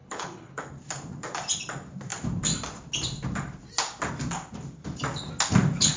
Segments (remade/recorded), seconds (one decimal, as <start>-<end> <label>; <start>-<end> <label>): 0.0-0.7 remade; 0.7-6.0 recorded